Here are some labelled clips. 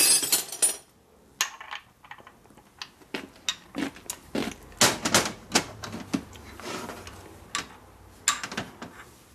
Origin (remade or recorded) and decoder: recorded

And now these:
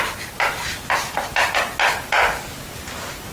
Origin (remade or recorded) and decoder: recorded